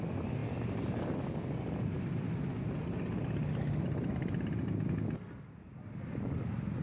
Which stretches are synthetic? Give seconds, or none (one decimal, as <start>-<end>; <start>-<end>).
none